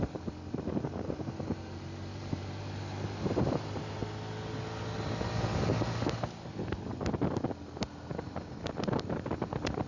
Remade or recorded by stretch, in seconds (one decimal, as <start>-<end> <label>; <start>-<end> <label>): 0.0-4.0 remade; 4.0-8.6 recorded; 8.6-9.9 remade